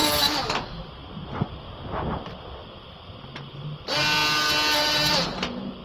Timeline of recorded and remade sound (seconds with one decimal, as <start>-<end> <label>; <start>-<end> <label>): 0.0-5.8 recorded